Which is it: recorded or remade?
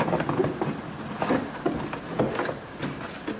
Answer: recorded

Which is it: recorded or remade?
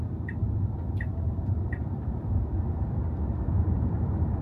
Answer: remade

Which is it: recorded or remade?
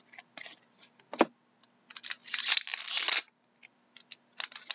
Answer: recorded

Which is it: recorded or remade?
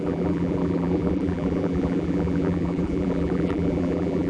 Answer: remade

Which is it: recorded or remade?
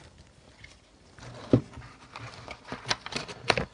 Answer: remade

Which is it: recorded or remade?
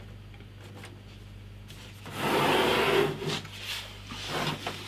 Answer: recorded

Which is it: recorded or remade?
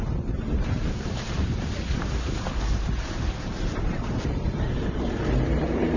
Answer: remade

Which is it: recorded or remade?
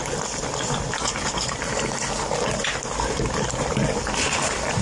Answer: remade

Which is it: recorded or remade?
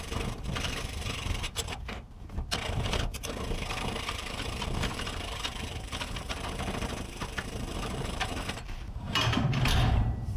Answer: remade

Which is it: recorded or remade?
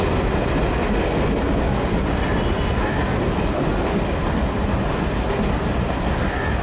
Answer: recorded